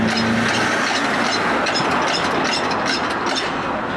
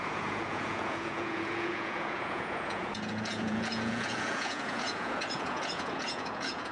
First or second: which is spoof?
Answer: second